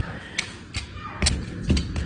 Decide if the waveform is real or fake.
real